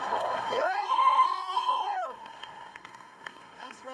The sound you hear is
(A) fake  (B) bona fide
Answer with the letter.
A